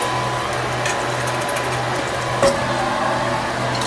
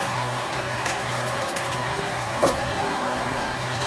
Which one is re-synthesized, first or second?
second